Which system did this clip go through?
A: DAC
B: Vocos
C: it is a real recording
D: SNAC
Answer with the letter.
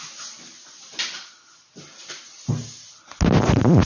C